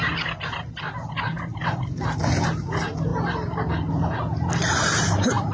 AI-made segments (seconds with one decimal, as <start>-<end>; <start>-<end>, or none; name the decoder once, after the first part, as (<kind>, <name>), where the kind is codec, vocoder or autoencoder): none